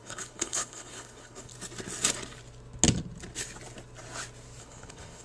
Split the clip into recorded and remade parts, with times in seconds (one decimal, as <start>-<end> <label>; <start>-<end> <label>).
0.0-1.5 remade; 1.5-4.6 recorded; 4.6-5.2 remade